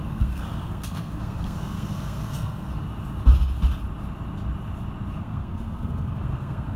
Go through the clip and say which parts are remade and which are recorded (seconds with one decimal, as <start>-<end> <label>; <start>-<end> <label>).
0.0-2.7 remade; 2.7-5.2 recorded; 5.2-6.8 remade